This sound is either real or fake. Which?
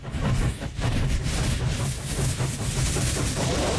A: real